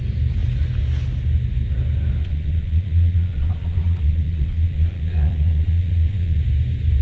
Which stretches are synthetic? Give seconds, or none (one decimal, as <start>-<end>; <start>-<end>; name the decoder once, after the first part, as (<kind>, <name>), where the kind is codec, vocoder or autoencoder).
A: 2.2-6.4 (vocoder, Vocos)